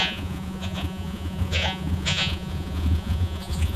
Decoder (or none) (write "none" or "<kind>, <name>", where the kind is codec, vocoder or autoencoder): vocoder, Vocos